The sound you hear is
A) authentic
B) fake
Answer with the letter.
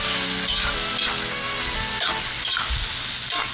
A